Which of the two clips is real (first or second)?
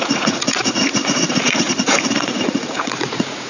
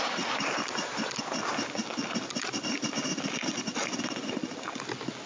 second